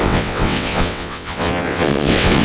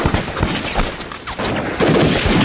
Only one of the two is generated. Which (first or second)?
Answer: first